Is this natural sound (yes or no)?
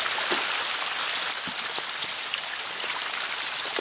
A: yes